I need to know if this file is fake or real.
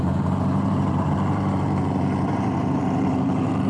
fake